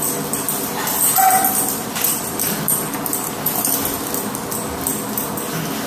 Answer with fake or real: real